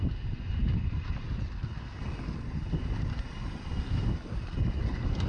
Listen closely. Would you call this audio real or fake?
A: real